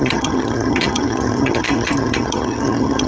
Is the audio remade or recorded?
remade